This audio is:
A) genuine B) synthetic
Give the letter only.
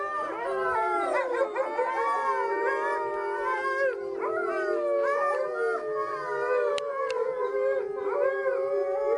A